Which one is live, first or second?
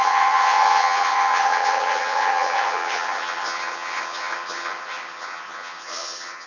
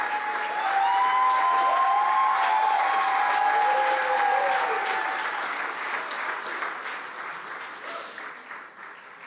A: second